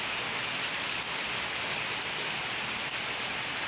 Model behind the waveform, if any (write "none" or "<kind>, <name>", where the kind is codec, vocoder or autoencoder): none